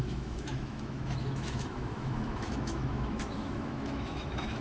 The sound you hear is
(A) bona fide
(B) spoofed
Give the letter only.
B